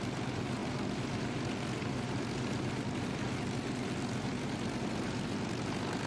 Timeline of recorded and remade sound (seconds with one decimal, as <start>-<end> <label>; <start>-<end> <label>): 0.0-6.1 recorded